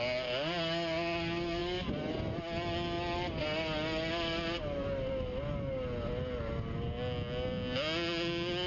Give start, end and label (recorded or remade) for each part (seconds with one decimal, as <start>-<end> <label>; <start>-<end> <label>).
0.0-8.7 recorded